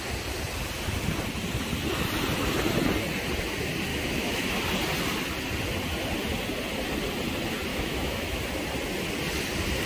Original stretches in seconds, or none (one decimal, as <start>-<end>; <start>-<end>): 0.0-3.9; 4.6-7.7; 8.4-9.9